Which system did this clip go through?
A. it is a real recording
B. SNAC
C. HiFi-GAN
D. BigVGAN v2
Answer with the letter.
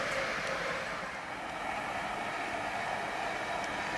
A